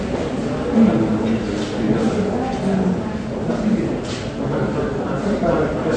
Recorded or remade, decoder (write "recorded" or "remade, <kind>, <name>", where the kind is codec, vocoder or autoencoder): recorded